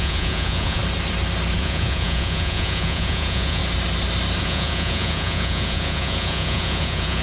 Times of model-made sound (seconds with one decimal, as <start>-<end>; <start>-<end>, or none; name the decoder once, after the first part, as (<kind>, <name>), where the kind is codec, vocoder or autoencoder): 0.0-0.8 (vocoder, Vocos); 1.6-3.6; 4.4-7.2